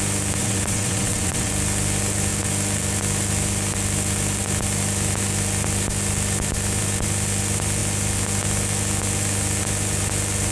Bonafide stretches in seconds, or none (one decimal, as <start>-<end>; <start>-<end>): 0.0-0.4; 1.5-10.5